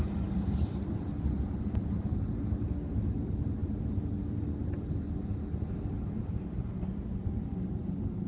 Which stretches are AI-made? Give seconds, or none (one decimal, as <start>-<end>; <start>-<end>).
none